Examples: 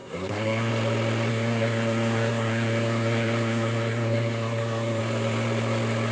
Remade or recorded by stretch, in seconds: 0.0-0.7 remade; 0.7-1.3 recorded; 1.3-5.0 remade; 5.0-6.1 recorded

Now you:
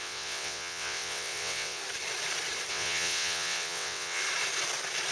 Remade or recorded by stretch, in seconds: 0.0-1.8 remade; 1.8-2.7 recorded; 2.7-4.2 remade; 4.2-5.1 recorded

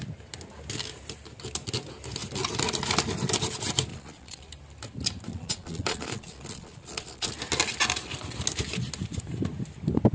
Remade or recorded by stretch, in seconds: 0.0-3.9 recorded; 3.9-4.5 remade; 4.5-5.3 recorded; 5.3-7.3 remade; 7.3-10.1 recorded

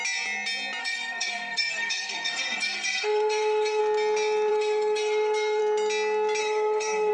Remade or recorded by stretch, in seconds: 0.0-0.8 recorded; 0.8-3.8 remade; 3.8-4.5 recorded; 4.5-5.6 remade; 5.6-6.4 recorded; 6.4-7.1 remade

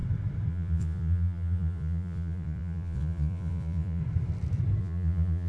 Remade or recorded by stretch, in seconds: 0.0-0.5 recorded; 0.5-4.0 remade; 4.0-4.8 recorded; 4.8-5.5 remade